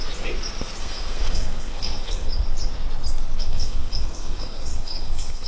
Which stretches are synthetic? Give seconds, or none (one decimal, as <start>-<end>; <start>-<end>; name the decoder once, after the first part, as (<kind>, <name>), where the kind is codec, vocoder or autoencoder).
0.8-2.3 (codec, SNAC); 3.4-5.5